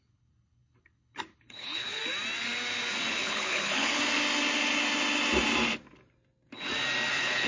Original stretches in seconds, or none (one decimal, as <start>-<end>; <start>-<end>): 2.0-3.1; 4.0-7.1